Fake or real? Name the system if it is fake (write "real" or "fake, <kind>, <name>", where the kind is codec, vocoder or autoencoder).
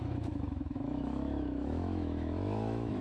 fake, autoencoder, DAC-VAE